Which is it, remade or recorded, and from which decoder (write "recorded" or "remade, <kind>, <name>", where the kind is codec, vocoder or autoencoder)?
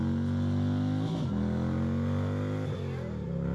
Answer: recorded